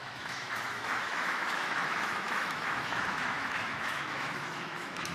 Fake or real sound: fake